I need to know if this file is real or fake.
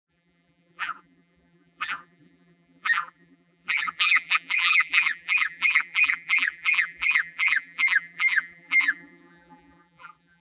fake